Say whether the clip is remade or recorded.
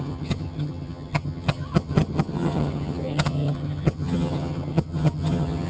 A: remade